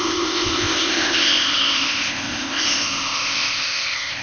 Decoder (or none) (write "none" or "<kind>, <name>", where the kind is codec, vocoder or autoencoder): codec, ZipCodec